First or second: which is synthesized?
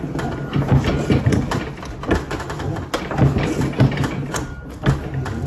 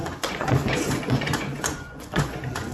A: second